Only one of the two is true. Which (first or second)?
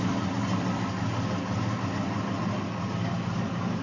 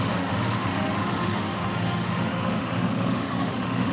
first